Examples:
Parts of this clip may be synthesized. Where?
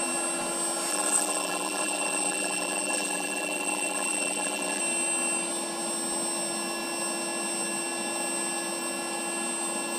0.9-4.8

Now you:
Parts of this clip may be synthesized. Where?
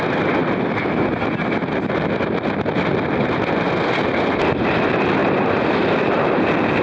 5.2-6.8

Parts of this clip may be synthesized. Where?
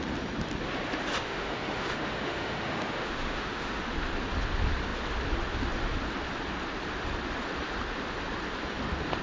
1.1-3.8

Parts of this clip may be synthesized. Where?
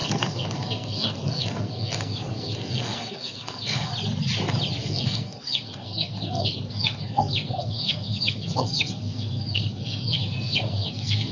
0.0-3.9; 4.8-11.3